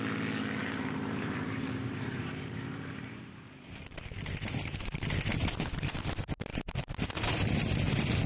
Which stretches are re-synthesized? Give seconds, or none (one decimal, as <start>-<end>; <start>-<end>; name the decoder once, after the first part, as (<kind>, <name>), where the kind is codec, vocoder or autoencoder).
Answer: 0.6-5.1 (vocoder, BigVGAN v2); 6.5-7.3